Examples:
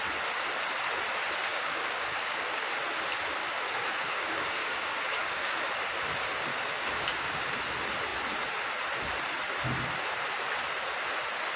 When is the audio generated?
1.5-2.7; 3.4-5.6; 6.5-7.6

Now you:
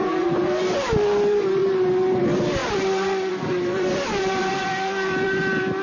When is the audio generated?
0.0-1.6; 2.2-2.6; 3.3-5.8

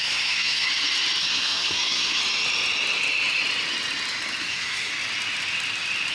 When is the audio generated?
0.0-0.7; 1.2-2.2; 4.4-4.9

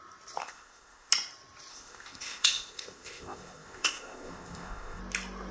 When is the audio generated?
0.4-1.1; 1.7-5.0

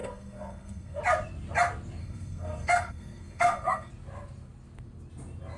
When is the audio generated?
0.0-1.0; 2.0-3.9